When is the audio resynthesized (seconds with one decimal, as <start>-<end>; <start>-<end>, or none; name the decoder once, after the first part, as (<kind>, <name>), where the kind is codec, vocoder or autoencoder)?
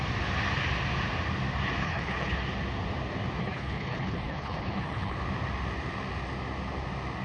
1.8-2.4 (codec, HILCodec); 3.4-5.2